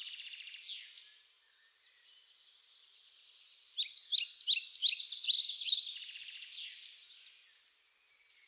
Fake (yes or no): no